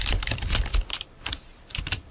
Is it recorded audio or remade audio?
remade